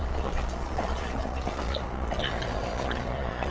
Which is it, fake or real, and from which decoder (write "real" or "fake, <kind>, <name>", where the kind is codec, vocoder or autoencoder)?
fake, vocoder, Vocos